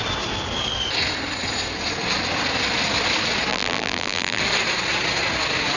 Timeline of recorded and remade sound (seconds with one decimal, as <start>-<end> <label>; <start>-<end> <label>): 0.0-3.5 recorded; 3.5-4.4 remade; 4.4-5.8 recorded